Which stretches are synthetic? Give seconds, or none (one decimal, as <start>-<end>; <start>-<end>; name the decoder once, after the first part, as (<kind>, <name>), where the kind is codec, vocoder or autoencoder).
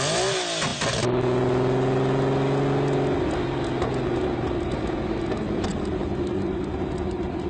none